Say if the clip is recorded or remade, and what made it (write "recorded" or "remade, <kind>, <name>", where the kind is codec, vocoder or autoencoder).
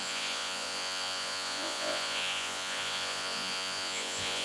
remade, vocoder, Vocos